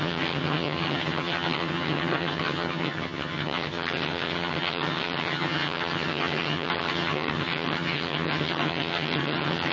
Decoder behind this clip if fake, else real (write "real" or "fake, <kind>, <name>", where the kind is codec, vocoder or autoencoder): fake, vocoder, HiFi-GAN